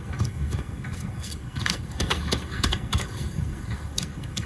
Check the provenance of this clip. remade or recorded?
remade